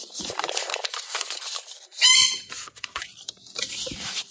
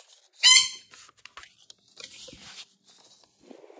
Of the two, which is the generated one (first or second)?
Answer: first